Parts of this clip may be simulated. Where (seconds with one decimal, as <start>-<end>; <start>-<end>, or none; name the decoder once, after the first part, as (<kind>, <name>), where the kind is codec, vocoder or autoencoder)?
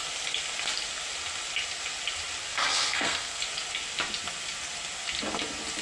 2.4-3.4 (codec, SNAC)